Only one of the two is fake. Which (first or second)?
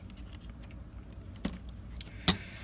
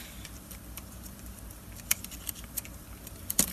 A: second